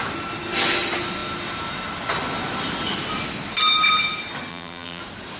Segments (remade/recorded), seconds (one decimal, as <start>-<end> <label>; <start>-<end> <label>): 0.0-4.5 recorded; 4.5-5.0 remade; 5.0-5.4 recorded